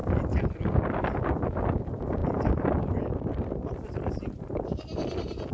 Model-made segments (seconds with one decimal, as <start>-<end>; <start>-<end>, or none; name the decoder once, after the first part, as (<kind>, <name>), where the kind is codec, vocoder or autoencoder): none